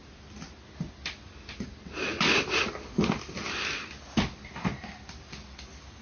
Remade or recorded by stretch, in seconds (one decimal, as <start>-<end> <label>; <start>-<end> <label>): 0.0-6.0 recorded